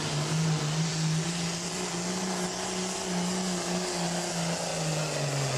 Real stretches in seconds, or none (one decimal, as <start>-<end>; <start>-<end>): 0.0-5.6